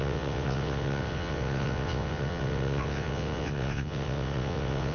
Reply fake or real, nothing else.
fake